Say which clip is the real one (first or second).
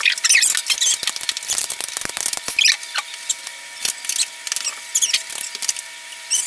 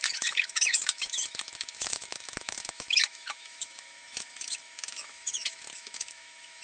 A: first